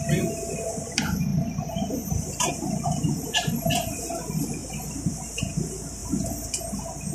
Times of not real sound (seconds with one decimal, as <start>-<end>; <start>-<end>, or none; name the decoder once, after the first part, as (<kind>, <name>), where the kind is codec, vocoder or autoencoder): 1.3-2.5 (vocoder, BigVGAN v2)